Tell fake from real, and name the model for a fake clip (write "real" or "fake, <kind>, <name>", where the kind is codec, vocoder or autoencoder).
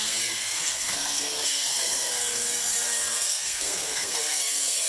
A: fake, codec, SNAC